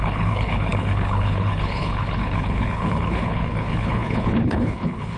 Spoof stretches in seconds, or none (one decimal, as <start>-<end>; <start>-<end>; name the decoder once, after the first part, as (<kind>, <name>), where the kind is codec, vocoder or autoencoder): 0.0-5.2 (codec, HILCodec)